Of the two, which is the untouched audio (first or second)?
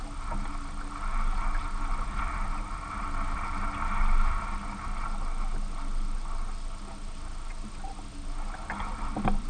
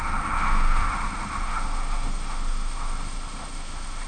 first